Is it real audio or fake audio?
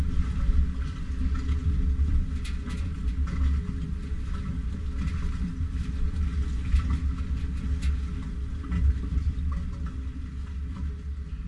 real